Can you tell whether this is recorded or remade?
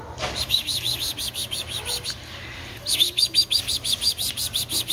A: recorded